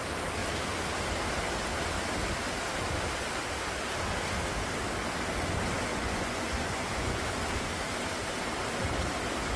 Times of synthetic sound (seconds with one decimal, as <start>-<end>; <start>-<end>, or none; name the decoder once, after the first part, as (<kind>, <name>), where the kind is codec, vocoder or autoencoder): 5.9-7.4 (vocoder, Vocos)